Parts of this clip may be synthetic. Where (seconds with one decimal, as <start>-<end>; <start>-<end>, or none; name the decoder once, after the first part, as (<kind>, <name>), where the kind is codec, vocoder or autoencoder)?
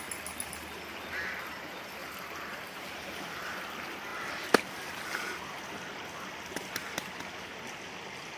2.0-3.3 (vocoder, BigVGAN v2)